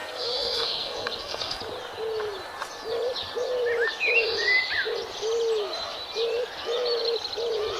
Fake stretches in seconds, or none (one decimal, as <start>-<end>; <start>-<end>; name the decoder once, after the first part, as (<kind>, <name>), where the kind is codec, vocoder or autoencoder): 0.0-1.6 (codec, SNAC)